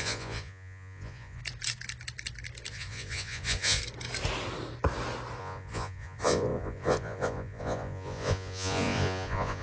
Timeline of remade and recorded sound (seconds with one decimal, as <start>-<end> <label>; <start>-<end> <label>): 0.0-1.4 remade; 1.4-2.7 recorded; 2.7-3.8 remade; 3.8-5.4 recorded; 5.4-9.6 remade